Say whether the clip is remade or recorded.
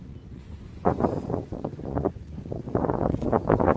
remade